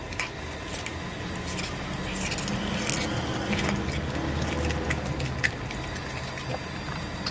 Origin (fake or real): real